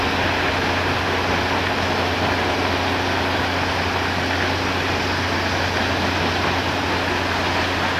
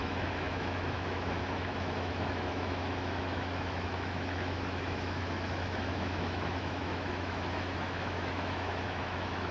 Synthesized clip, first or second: second